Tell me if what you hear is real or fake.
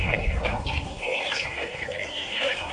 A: fake